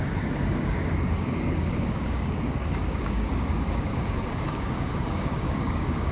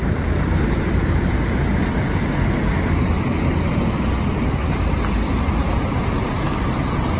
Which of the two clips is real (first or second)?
second